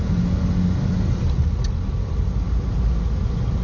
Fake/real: real